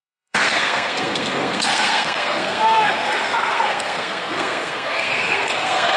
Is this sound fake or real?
fake